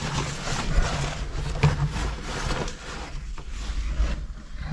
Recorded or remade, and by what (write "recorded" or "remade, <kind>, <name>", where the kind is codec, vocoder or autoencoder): recorded